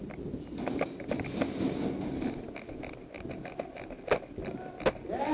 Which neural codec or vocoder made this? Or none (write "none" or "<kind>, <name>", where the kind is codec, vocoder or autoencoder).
none